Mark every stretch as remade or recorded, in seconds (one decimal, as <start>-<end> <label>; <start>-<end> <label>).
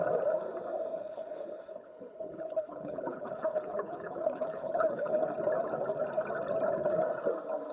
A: 0.0-0.9 recorded; 0.9-5.2 remade; 5.2-7.7 recorded